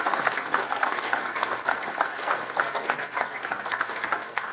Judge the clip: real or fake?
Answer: fake